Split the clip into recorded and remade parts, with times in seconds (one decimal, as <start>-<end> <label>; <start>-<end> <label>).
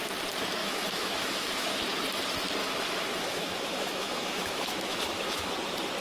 0.0-0.6 recorded; 0.6-1.8 remade; 1.8-2.6 recorded; 2.6-5.5 remade; 5.5-6.0 recorded